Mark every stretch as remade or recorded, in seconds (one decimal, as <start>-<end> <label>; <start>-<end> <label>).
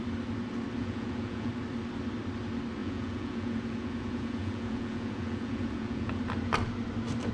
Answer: 0.0-0.8 recorded; 0.8-1.5 remade; 1.5-2.8 recorded; 2.8-6.2 remade; 6.2-7.3 recorded